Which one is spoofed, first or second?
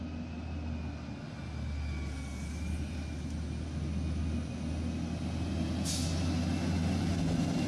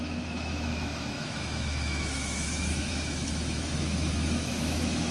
second